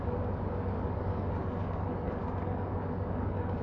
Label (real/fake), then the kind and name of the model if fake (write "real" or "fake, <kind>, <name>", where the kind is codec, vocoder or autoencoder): fake, codec, DAC